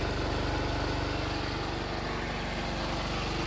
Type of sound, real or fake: real